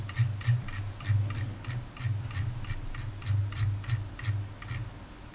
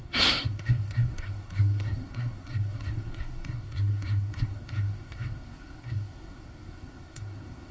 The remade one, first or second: second